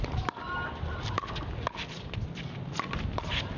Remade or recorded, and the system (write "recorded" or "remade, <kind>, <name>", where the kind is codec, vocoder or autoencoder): recorded